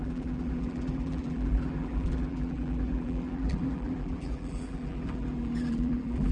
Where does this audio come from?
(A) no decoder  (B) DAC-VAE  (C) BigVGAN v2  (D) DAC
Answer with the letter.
C